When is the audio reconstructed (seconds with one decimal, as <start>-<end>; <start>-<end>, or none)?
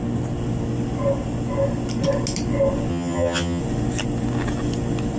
2.9-3.6